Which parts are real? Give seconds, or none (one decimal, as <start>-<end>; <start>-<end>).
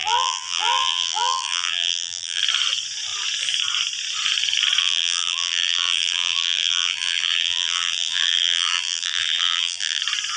2.4-4.8; 10.0-10.4